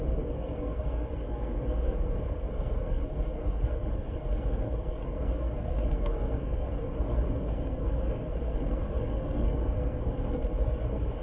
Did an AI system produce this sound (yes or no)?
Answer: yes